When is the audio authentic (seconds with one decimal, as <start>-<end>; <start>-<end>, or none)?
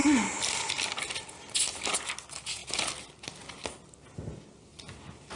0.0-4.7